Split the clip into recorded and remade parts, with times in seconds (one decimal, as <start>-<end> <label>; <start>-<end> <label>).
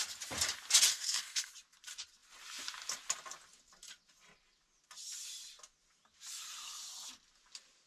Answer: 0.0-0.9 recorded; 0.9-1.5 remade; 1.5-7.9 recorded